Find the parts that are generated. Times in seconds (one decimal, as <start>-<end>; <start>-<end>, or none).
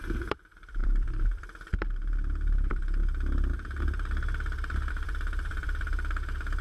0.0-3.5; 4.9-6.6